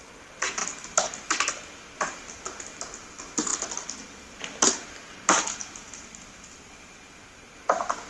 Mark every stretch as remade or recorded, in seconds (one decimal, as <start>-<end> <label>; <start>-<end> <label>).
0.0-8.1 recorded